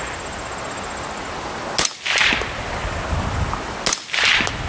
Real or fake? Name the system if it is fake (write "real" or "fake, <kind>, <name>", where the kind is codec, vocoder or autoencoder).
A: real